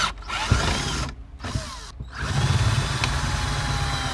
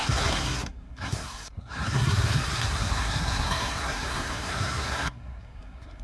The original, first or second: first